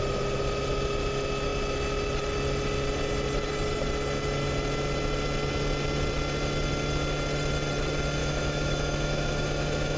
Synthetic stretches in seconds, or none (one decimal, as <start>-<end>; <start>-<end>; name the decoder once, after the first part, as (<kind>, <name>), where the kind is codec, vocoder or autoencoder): 8.2-10.0 (autoencoder, DAC-VAE)